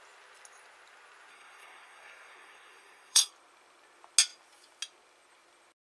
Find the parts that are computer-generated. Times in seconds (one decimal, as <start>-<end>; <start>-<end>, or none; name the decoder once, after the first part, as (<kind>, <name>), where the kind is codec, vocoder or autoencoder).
1.3-3.3 (codec, SNAC)